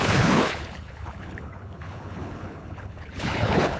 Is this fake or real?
fake